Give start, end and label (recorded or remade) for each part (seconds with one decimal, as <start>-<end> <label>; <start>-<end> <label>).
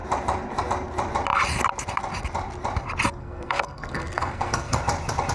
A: 0.0-3.2 recorded; 3.2-4.8 remade; 4.8-5.3 recorded